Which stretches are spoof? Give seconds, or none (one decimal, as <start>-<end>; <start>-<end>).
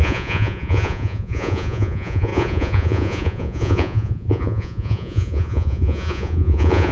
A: 0.0-6.9